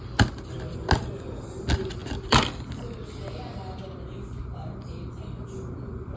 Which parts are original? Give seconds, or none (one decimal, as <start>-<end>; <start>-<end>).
0.0-6.2